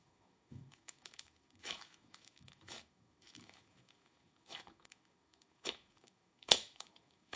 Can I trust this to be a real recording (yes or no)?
no